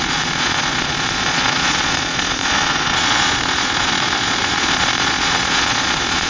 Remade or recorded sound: remade